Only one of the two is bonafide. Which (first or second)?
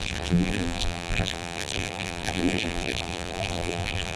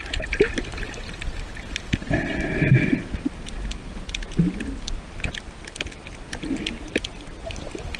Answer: second